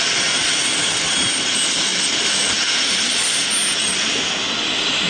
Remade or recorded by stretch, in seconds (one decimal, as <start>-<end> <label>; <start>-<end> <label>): 0.0-5.1 recorded